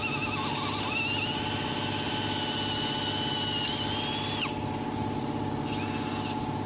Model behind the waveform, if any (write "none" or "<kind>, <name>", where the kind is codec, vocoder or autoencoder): none